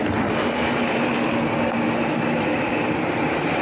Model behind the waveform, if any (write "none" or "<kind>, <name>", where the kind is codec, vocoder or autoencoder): none